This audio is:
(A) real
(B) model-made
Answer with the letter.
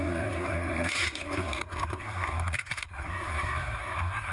B